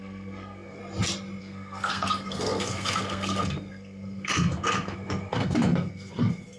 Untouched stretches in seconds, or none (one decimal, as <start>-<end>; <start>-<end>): 0.8-1.4